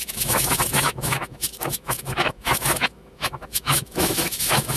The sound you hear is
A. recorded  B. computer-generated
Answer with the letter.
B